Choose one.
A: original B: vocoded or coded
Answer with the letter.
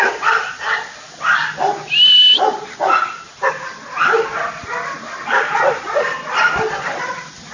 A